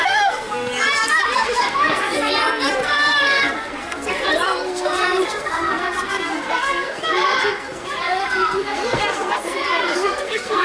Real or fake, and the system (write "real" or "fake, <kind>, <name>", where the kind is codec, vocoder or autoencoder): fake, codec, SNAC